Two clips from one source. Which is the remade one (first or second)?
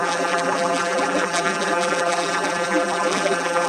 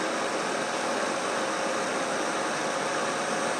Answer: first